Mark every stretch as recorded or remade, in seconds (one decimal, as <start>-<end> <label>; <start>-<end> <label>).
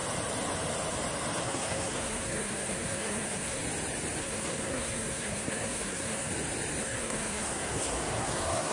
0.0-1.4 recorded; 1.4-3.6 remade; 3.6-4.2 recorded; 4.2-6.3 remade; 6.3-6.8 recorded; 6.8-8.7 remade